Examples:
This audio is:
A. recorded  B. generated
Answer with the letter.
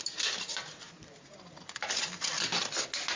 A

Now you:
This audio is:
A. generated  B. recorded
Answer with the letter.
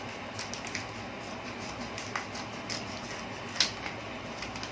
B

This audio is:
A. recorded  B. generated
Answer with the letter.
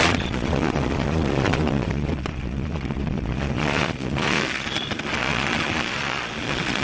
B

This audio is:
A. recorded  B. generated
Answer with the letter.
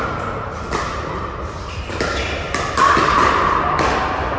A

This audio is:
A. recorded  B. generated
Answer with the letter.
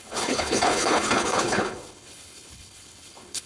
B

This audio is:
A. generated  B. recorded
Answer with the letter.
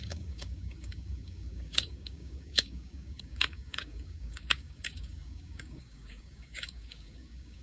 A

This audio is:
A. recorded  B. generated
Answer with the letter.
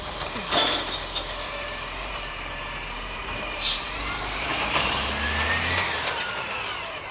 B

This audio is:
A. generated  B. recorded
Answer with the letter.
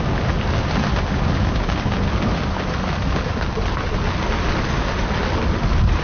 B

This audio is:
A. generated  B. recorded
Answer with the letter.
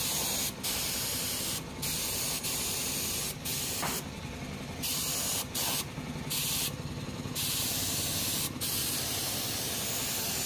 B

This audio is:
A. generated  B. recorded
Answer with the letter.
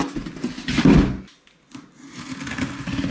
B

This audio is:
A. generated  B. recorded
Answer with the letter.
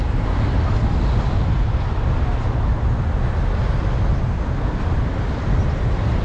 B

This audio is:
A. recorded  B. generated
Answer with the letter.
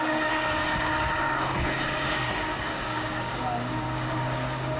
B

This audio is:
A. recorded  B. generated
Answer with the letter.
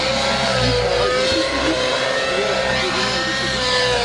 A